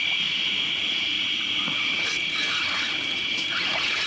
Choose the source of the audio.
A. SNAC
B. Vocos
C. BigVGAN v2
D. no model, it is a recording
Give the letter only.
B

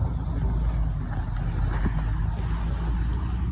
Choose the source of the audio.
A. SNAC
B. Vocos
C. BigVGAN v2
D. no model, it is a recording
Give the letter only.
D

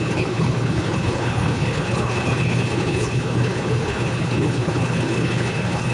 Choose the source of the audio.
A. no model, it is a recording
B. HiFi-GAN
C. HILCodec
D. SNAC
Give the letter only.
C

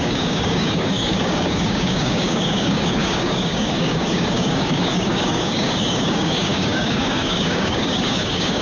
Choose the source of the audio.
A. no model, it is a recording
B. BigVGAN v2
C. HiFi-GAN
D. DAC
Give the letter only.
D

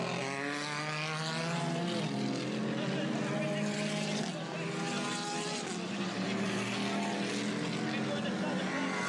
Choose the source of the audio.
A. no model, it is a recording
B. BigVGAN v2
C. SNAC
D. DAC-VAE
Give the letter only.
A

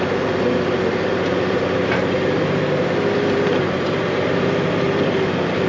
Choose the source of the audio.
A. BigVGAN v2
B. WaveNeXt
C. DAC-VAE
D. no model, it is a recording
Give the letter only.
A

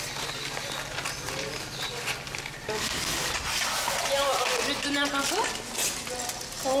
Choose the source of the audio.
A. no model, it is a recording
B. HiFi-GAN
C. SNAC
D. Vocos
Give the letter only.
A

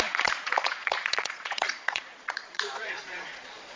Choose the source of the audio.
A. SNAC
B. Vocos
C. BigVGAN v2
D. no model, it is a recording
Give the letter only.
B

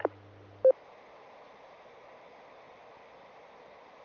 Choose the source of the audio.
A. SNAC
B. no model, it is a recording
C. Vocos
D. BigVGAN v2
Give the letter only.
B